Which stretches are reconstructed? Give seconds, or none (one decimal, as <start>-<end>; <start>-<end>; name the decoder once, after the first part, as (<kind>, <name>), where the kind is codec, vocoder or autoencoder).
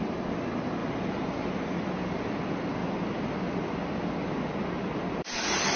0.8-2.4 (vocoder, BigVGAN v2)